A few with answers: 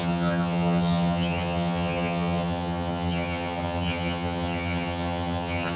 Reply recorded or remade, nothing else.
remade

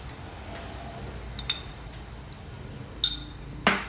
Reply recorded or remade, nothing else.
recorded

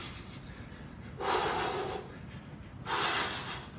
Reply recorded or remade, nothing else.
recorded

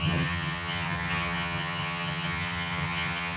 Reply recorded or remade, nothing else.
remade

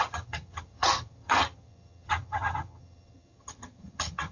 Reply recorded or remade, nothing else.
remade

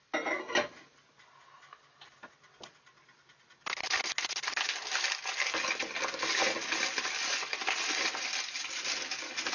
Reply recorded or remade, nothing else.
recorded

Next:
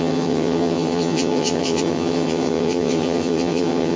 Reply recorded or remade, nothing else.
remade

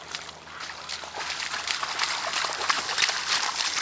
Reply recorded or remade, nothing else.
recorded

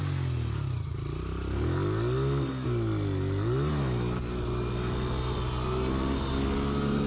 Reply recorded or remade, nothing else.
recorded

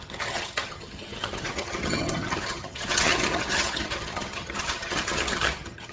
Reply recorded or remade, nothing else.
remade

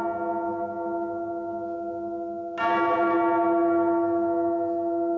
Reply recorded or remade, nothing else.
recorded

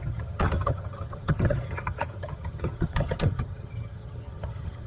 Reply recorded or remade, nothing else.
remade